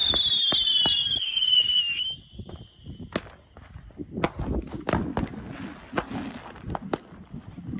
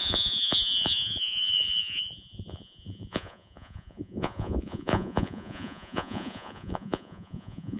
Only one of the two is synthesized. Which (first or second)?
second